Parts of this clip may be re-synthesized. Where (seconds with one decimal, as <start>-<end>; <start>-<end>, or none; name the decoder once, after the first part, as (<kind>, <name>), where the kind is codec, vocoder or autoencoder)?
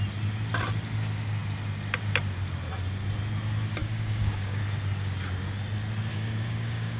3.8-4.6 (codec, DAC); 6.1-7.0